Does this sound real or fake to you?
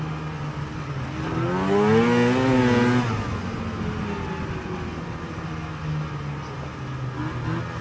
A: real